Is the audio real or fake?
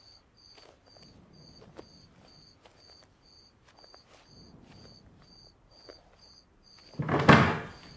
real